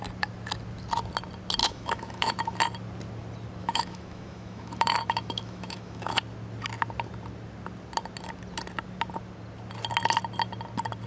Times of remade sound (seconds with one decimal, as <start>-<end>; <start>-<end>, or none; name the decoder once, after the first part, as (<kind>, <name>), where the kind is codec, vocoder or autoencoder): 1.6-2.6 (autoencoder, DAC-VAE); 3.6-6.2